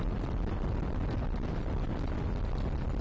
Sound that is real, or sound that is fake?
real